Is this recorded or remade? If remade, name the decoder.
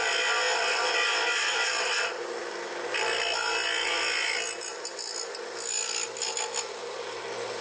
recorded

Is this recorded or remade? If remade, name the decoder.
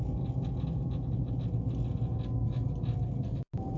recorded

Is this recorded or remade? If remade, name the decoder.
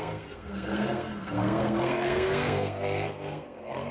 remade, codec, SNAC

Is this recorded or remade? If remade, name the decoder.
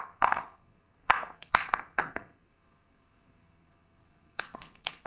remade, codec, SNAC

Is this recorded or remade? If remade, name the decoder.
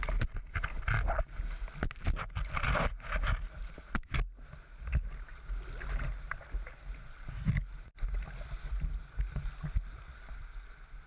recorded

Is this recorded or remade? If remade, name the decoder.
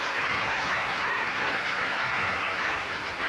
remade, codec, SNAC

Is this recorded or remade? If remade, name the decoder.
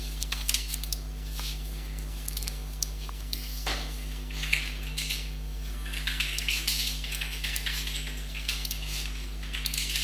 remade, codec, SNAC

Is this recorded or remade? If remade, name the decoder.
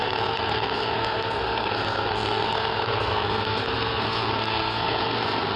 remade, codec, SNAC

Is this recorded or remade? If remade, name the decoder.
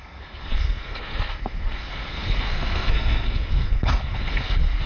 remade, codec, SNAC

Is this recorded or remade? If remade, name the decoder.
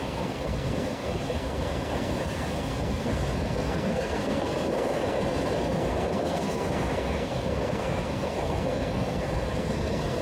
remade, codec, SNAC